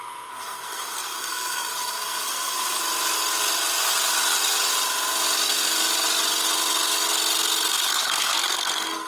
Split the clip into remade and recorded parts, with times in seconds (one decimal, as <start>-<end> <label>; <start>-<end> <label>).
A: 0.0-2.8 remade; 2.8-7.9 recorded; 7.9-9.1 remade